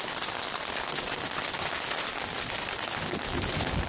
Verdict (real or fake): real